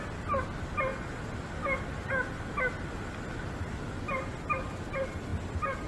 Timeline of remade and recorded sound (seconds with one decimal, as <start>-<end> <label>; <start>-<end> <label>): 0.0-5.9 recorded